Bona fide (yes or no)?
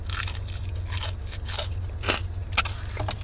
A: yes